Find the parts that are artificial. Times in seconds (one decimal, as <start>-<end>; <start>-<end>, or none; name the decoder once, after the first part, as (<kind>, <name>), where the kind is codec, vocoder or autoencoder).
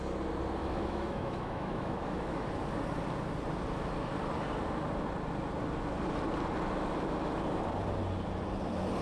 0.6-2.5 (autoencoder, DAC-VAE)